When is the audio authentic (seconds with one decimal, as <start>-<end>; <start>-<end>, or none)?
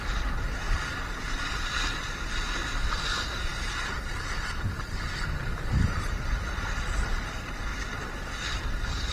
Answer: 0.0-3.5; 6.9-9.1